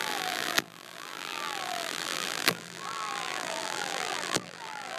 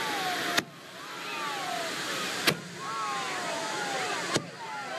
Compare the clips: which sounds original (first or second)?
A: second